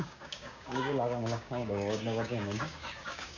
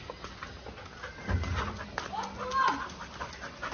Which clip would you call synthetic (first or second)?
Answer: first